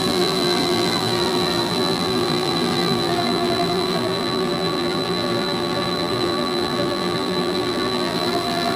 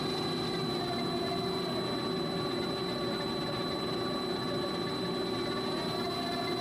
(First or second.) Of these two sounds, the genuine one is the second